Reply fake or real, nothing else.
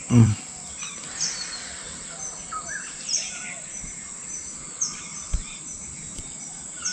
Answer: fake